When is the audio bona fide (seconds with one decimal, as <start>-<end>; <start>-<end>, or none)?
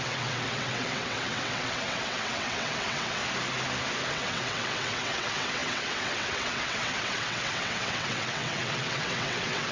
3.2-4.1